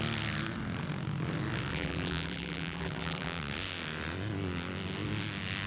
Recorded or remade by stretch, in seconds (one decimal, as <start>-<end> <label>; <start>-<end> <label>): 0.0-1.7 recorded; 1.7-3.4 remade; 3.4-5.7 recorded